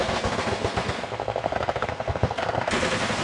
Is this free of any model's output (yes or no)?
no